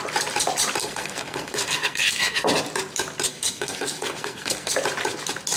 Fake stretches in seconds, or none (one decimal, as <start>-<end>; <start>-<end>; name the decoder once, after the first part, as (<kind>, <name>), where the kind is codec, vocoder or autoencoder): 0.8-2.5 (codec, SNAC); 3.3-4.7